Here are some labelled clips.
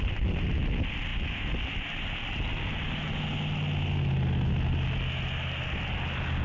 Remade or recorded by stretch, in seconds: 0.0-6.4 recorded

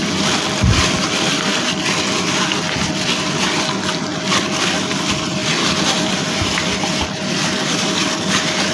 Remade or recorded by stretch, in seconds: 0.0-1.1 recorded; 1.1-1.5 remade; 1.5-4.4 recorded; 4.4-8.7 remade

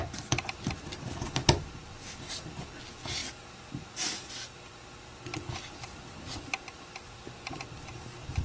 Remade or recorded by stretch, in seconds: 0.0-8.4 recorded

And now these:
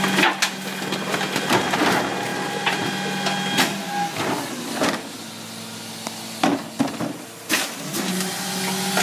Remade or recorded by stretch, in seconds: 0.0-2.3 recorded; 2.3-2.9 remade; 2.9-9.0 recorded

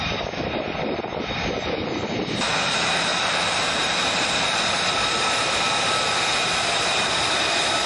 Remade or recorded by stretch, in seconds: 0.0-3.1 recorded; 3.1-5.6 remade; 5.6-7.9 recorded

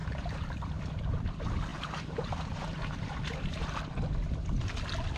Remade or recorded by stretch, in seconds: 0.0-0.8 remade; 0.8-1.7 recorded; 1.7-4.0 remade; 4.0-5.2 recorded

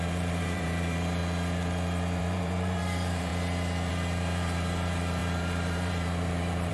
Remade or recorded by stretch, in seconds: 0.0-1.2 remade; 1.2-2.2 recorded; 2.2-3.3 remade; 3.3-3.9 recorded; 3.9-6.7 remade

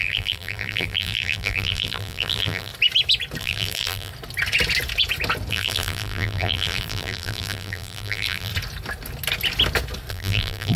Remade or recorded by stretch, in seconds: 0.0-2.7 remade; 2.7-3.4 recorded; 3.4-4.1 remade; 4.1-5.5 recorded; 5.5-8.5 remade; 8.5-10.1 recorded; 10.1-10.8 remade